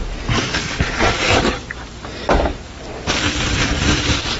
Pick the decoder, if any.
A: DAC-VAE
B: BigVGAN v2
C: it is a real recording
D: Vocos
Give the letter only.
C